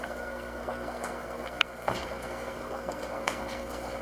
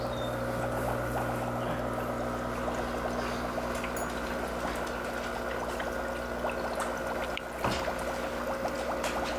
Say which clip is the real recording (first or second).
second